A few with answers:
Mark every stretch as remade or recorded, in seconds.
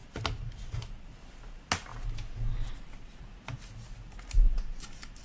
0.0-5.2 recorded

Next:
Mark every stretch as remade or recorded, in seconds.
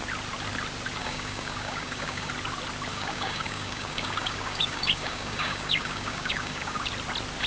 0.0-1.0 recorded; 1.0-2.3 remade; 2.3-2.9 recorded; 2.9-6.9 remade; 6.9-7.5 recorded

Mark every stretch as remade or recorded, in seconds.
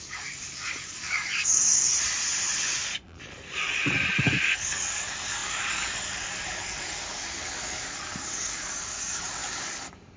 0.0-1.9 remade; 1.9-4.2 recorded; 4.2-10.2 remade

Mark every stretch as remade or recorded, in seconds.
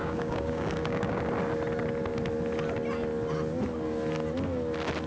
0.0-1.2 remade; 1.2-5.1 recorded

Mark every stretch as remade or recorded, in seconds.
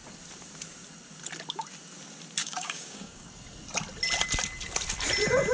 0.0-2.4 recorded; 2.4-3.3 remade; 3.3-5.5 recorded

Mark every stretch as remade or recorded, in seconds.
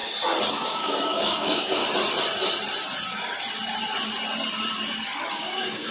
0.0-0.5 recorded; 0.5-1.8 remade; 1.8-5.3 recorded; 5.3-5.9 remade